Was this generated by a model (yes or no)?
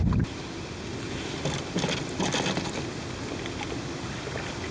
no